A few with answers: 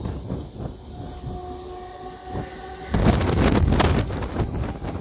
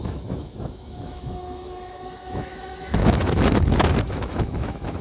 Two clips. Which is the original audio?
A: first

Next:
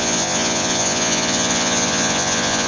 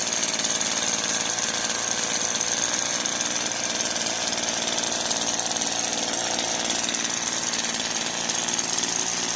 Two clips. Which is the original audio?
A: second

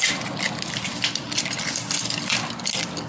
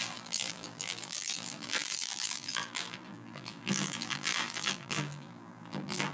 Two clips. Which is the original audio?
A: first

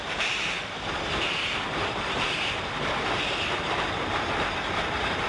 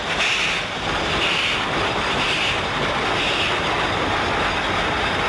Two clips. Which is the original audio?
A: second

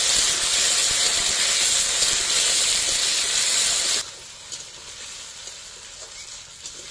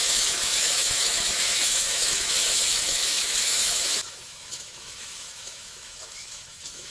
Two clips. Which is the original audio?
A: first